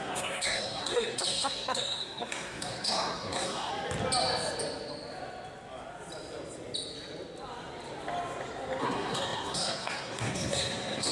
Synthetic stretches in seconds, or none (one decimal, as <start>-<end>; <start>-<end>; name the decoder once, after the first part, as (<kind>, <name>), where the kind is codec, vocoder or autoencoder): 0.0-3.7 (codec, SNAC); 8.8-11.1